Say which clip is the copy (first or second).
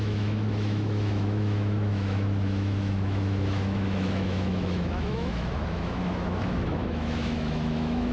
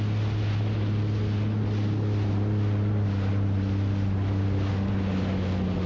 first